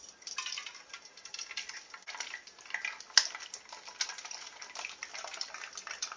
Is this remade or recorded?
recorded